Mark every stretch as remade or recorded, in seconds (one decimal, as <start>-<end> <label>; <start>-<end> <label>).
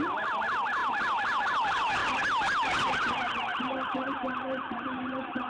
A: 0.0-5.5 recorded